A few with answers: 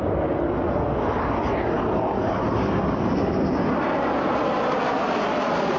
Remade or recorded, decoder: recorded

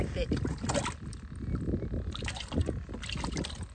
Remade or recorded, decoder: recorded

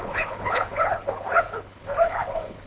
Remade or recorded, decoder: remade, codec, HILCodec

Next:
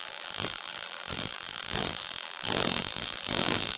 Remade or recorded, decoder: remade, vocoder, BigVGAN v2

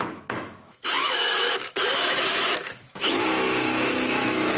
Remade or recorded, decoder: remade, autoencoder, DAC-VAE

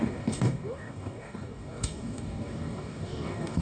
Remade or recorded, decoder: remade, codec, DAC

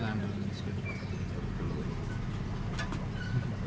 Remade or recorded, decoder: recorded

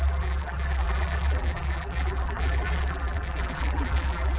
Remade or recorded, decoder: remade, vocoder, BigVGAN v2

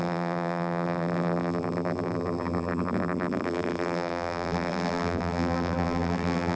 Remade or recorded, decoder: remade, vocoder, BigVGAN v2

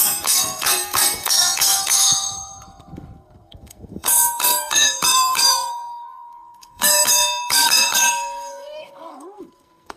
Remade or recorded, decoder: remade, codec, SNAC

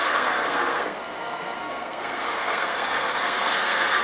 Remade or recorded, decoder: remade, codec, SNAC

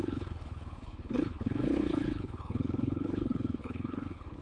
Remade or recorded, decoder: remade, codec, HILCodec